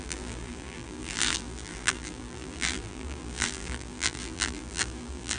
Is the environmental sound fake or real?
fake